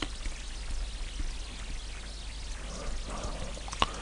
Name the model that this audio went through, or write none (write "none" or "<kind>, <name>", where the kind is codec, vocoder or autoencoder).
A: none